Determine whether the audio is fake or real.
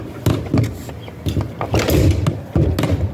real